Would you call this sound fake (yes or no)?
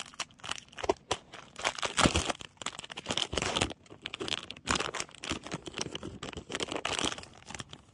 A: no